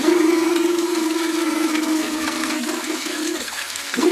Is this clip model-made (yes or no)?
yes